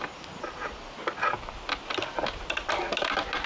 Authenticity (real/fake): real